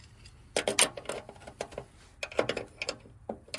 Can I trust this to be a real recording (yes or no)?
yes